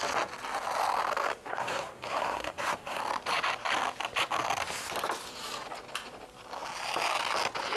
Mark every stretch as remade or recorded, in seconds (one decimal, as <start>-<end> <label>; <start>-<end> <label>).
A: 0.0-1.5 recorded; 1.5-3.0 remade; 3.0-7.8 recorded